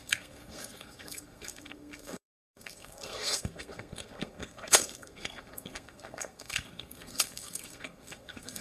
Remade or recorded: remade